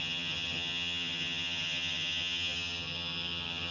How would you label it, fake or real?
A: fake